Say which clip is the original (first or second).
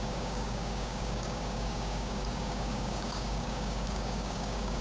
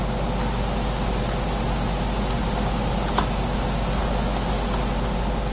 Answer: second